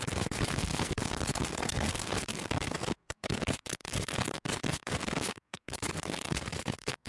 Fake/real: fake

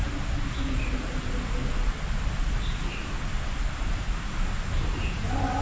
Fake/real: real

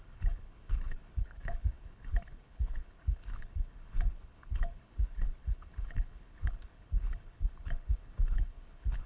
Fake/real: fake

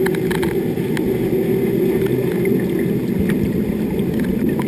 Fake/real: real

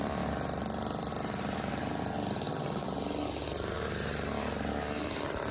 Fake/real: real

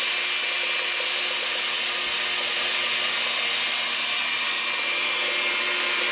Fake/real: real